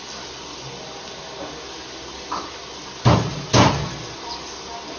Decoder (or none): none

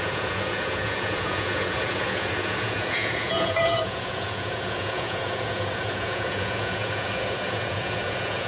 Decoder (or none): vocoder, Vocos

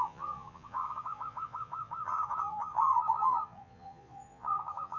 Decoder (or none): vocoder, Vocos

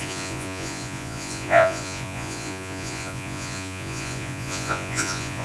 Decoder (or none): vocoder, Vocos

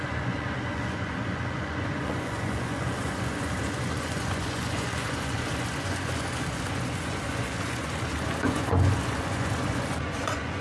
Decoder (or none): vocoder, Vocos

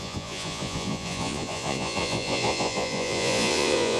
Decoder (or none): vocoder, Vocos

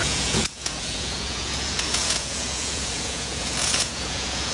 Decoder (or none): vocoder, Vocos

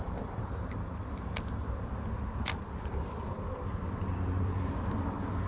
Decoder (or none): none